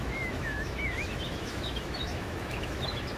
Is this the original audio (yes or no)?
no